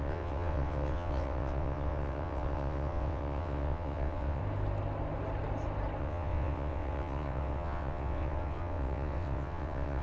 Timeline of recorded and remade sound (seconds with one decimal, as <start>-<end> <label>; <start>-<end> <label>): 0.0-4.4 remade; 4.4-6.0 recorded; 6.0-10.0 remade